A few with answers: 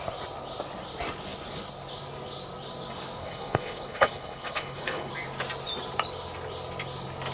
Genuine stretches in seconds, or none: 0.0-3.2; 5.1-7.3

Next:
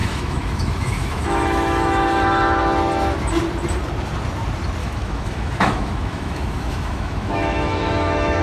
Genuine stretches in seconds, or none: 2.6-4.8